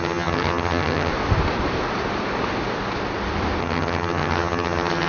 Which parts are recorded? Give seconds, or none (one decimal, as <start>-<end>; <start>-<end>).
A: 1.1-3.6